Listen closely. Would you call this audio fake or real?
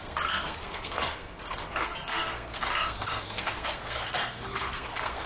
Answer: fake